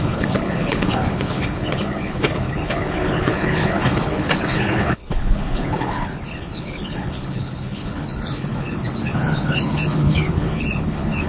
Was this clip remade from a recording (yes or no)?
yes